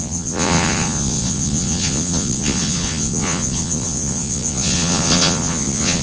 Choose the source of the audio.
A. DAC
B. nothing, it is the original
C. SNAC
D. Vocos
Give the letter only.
D